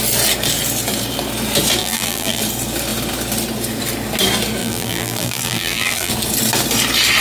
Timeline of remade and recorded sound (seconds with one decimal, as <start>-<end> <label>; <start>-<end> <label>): 0.0-1.8 recorded; 1.8-2.4 remade; 2.4-4.6 recorded; 4.6-6.1 remade; 6.1-7.2 recorded